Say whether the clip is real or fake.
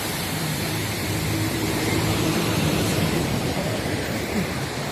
fake